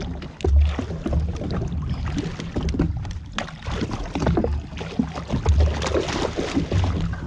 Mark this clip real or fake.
real